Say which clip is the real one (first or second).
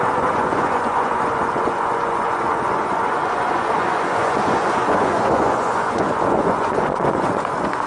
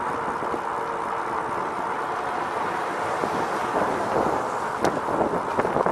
second